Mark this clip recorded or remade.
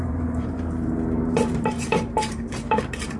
remade